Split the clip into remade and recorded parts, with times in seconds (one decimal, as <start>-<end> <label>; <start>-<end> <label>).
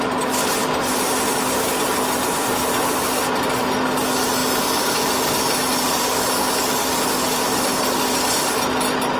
0.0-9.2 recorded